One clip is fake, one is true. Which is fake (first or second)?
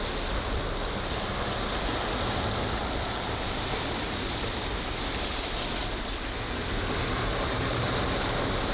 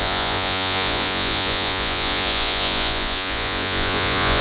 second